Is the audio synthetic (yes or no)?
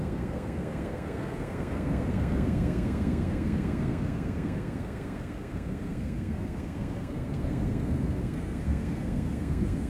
yes